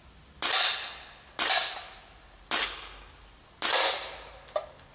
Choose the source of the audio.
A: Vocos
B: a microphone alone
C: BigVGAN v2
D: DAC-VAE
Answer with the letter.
B